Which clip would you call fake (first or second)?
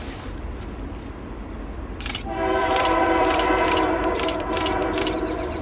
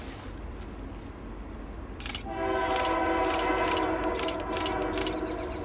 first